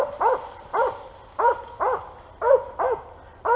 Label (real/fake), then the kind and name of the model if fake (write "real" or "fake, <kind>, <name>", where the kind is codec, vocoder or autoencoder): real